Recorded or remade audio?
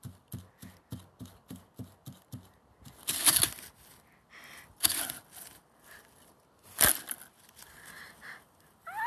recorded